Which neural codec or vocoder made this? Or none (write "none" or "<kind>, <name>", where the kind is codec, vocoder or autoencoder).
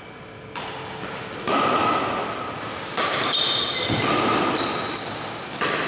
none